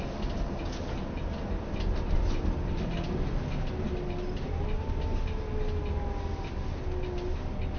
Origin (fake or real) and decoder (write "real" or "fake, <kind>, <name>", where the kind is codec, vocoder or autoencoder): real